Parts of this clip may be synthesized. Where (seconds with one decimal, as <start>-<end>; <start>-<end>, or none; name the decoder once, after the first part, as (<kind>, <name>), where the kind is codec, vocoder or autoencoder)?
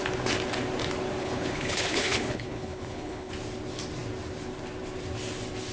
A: 1.2-3.3 (codec, HILCodec)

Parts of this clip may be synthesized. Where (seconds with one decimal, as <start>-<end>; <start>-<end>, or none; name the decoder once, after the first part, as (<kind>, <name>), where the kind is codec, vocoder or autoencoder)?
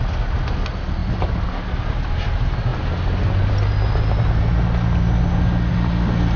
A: none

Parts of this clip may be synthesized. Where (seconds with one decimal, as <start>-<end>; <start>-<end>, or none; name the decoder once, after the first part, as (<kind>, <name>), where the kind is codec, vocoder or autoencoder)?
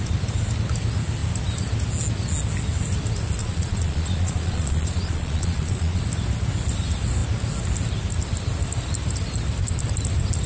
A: 3.4-6.0 (vocoder, Vocos)